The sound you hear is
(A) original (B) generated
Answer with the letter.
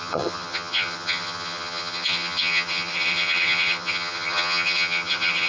B